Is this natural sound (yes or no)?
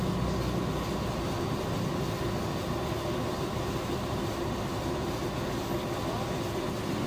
yes